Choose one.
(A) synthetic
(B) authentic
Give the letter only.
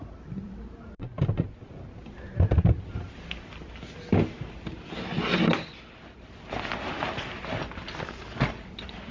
B